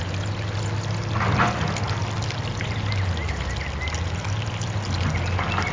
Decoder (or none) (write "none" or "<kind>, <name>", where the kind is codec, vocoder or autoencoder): none